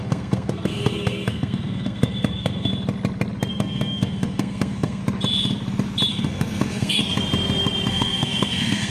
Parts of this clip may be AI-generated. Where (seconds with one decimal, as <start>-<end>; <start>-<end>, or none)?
0.0-2.7; 3.5-5.0; 6.1-7.0; 7.9-8.9

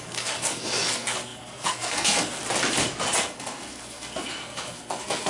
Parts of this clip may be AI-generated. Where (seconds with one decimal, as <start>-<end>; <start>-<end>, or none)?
0.0-2.4; 3.2-5.3

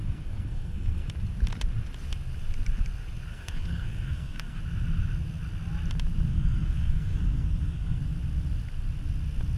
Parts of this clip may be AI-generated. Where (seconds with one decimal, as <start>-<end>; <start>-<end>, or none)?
0.0-1.1; 3.3-4.6; 6.3-8.0

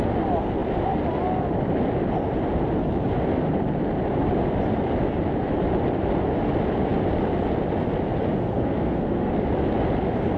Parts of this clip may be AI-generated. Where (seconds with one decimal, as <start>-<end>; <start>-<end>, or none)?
8.4-9.3

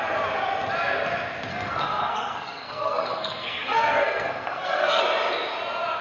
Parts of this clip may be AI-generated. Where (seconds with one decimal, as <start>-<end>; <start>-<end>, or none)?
1.5-5.0

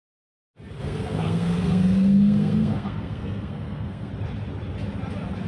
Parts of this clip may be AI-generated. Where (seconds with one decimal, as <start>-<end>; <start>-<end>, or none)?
0.8-4.1

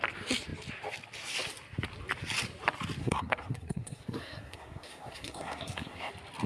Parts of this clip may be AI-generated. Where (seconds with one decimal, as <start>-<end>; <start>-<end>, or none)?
3.0-6.1

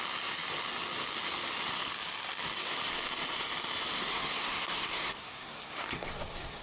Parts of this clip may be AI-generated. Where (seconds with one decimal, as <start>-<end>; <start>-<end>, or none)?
3.9-6.6